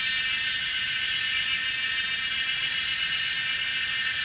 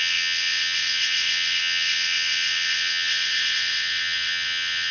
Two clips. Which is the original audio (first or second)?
first